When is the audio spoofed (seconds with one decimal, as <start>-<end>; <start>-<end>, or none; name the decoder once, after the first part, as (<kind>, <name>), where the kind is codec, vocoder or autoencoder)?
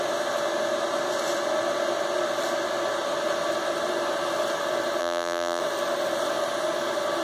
5.0-5.6 (vocoder, BigVGAN v2)